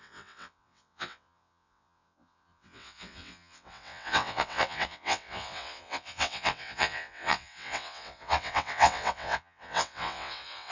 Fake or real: fake